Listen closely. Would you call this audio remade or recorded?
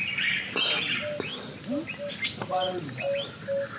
recorded